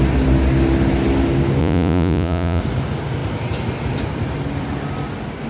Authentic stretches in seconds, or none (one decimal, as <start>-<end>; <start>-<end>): 0.0-1.6; 2.6-5.5